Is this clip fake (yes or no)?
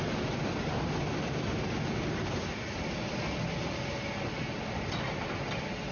no